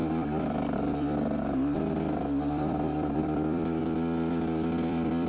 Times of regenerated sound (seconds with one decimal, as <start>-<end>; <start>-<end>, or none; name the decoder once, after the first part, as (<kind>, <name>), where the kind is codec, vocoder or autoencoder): 0.0-5.3 (vocoder, BigVGAN v2)